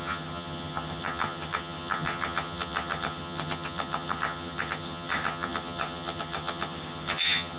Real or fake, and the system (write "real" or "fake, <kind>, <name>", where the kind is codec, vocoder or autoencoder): fake, vocoder, HiFi-GAN